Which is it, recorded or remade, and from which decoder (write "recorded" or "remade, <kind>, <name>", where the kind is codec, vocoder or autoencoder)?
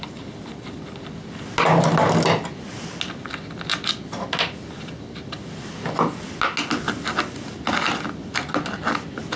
recorded